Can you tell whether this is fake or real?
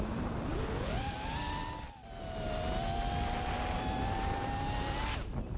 real